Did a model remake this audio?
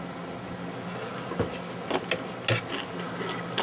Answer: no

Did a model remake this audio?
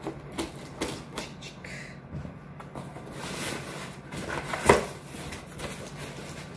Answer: no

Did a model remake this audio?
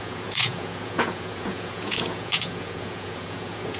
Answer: yes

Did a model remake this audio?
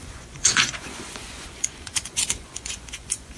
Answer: yes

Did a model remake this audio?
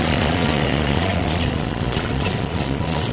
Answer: yes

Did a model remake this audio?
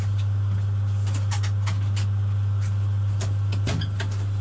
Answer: no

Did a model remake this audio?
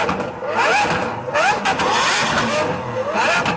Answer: no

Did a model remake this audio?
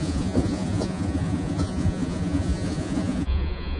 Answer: yes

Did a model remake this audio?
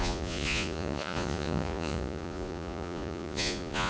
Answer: yes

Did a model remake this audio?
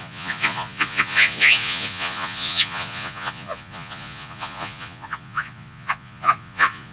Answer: yes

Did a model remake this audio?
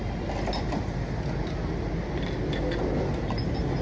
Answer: no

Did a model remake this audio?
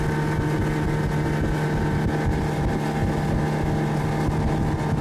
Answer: no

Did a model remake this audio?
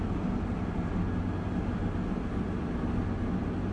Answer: no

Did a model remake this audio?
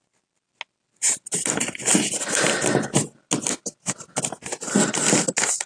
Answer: no